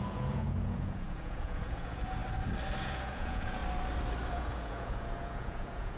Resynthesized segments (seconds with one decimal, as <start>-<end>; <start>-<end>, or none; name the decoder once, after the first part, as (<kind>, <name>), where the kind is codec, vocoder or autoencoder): 0.0-2.2 (vocoder, Vocos); 2.8-3.6; 4.3-6.0